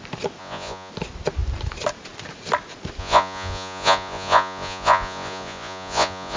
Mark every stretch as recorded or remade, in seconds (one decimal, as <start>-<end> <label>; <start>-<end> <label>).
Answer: 0.0-0.4 recorded; 0.4-0.9 remade; 0.9-3.0 recorded; 3.0-6.4 remade